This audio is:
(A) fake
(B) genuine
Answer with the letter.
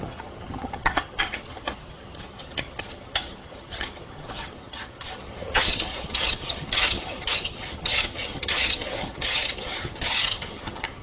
A